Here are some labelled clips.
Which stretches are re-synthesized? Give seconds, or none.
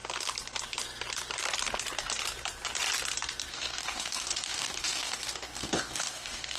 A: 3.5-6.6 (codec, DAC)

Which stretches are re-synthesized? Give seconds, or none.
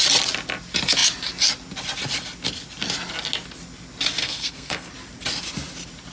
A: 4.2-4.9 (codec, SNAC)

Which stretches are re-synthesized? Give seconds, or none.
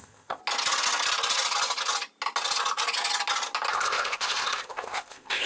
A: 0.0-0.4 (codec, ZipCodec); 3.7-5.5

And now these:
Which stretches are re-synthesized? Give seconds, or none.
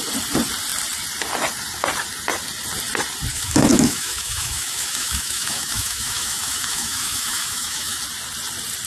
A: 3.3-8.0 (autoencoder, DAC-VAE)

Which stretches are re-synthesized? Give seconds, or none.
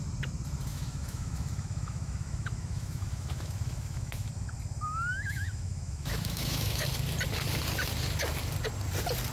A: 0.7-4.3 (autoencoder, DAC-VAE); 5.1-6.8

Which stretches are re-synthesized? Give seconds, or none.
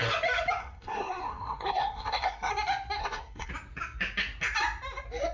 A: 0.6-2.5 (codec, SNAC); 3.0-3.5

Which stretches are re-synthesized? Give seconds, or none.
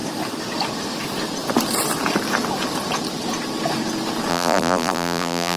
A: 4.3-5.6 (vocoder, BigVGAN v2)